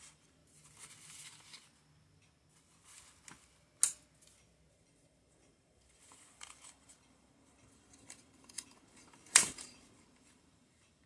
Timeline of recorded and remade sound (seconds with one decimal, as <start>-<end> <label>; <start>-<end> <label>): 0.0-0.4 remade; 0.4-4.7 recorded; 4.7-11.1 remade

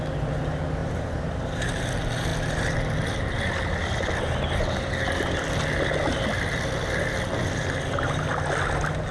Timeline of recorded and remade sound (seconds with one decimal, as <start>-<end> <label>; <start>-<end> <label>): 0.0-0.8 recorded; 0.8-1.9 remade; 1.9-9.1 recorded

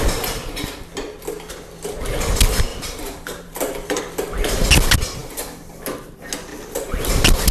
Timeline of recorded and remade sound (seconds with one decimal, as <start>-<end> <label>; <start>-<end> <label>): 0.0-2.7 recorded; 2.7-4.0 remade; 4.0-6.5 recorded; 6.5-7.0 remade; 7.0-7.5 recorded

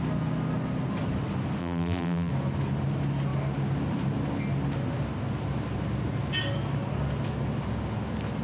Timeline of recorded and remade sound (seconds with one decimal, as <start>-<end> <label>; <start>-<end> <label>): 0.0-1.6 recorded; 1.6-2.3 remade; 2.3-8.4 recorded

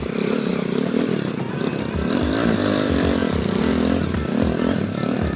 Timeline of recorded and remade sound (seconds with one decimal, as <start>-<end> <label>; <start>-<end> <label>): 0.0-0.5 remade; 0.5-1.3 recorded; 1.3-3.2 remade; 3.2-4.8 recorded; 4.8-5.4 remade

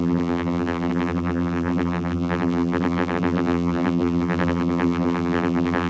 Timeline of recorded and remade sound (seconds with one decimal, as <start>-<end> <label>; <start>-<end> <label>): 0.0-5.9 remade

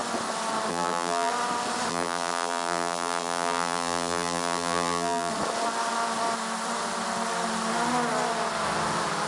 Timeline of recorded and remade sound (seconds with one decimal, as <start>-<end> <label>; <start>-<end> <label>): 0.0-0.7 recorded; 0.7-1.3 remade; 1.3-1.9 recorded; 1.9-5.3 remade; 5.3-9.3 recorded